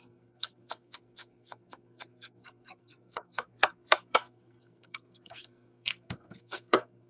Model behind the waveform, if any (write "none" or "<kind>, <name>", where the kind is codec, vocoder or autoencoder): codec, SNAC